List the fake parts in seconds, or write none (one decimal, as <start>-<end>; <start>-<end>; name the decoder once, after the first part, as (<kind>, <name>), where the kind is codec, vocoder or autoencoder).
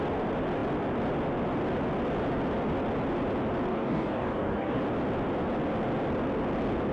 3.7-4.8 (codec, DAC)